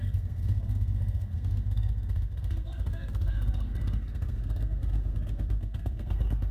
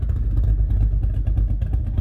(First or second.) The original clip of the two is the second